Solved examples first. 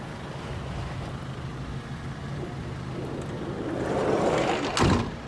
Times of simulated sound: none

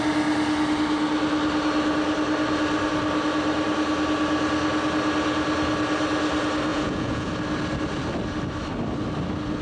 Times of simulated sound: 6.7-7.3 (vocoder, Vocos)

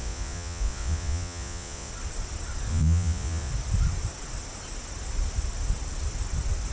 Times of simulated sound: 0.0-1.9 (vocoder, Vocos); 2.7-3.5